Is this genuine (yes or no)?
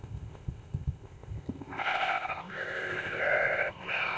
no